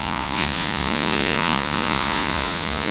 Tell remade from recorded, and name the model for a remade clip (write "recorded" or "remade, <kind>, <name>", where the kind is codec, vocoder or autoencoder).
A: remade, vocoder, Vocos